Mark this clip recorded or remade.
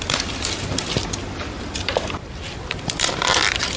remade